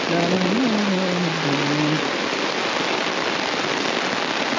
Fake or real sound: real